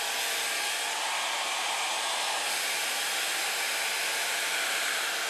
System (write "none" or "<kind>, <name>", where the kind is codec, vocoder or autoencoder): none